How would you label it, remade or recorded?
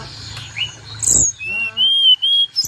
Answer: recorded